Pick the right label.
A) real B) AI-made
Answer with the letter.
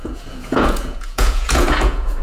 B